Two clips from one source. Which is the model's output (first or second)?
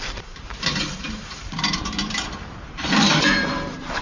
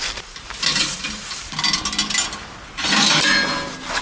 first